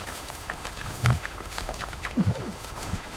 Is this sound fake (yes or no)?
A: yes